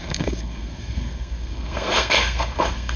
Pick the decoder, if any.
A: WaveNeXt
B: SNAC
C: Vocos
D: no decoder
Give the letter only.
B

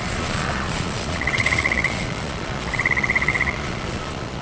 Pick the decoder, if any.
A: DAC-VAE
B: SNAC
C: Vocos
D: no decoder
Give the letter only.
C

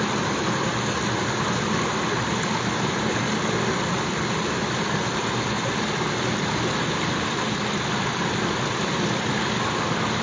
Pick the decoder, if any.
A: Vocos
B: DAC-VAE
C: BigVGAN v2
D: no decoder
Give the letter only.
D